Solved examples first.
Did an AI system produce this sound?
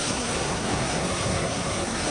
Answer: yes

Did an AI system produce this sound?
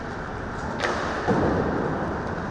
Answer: no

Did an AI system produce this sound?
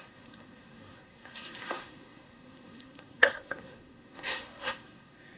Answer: yes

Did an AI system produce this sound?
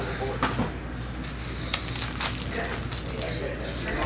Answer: no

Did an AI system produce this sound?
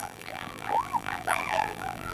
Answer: yes